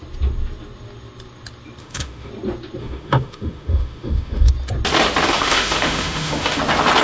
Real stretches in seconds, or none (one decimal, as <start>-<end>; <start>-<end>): 0.0-1.8; 2.3-2.8; 4.5-5.3; 6.6-7.0